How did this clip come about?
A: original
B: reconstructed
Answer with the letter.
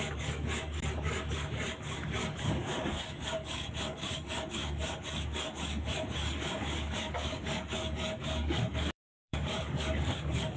B